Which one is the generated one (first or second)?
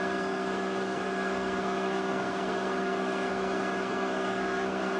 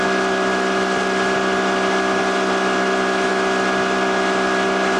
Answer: first